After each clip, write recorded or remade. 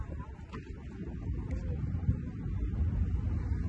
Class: recorded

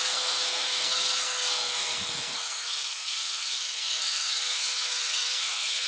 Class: remade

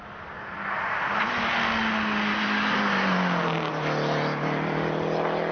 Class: recorded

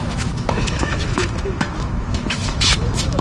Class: remade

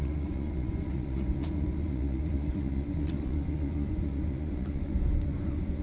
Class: remade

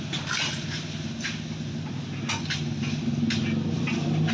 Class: recorded